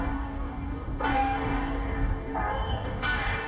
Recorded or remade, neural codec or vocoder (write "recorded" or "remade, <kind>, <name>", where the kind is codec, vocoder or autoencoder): remade, codec, DAC